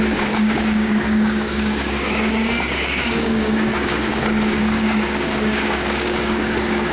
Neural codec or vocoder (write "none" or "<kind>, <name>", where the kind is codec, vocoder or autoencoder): codec, DAC